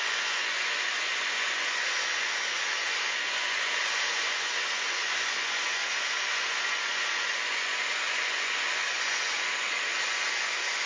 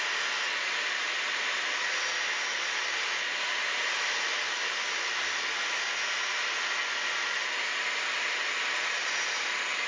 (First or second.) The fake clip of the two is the first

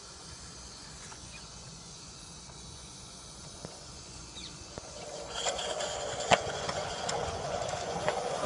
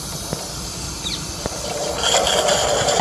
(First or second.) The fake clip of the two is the first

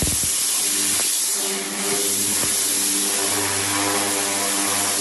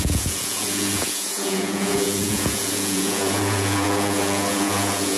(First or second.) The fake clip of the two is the second